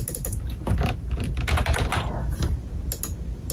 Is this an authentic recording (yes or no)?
yes